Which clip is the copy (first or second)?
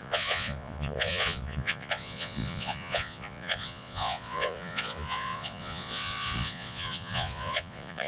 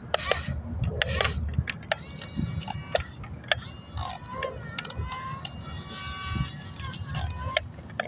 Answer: first